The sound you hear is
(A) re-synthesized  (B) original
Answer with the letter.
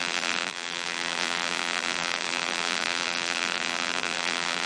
A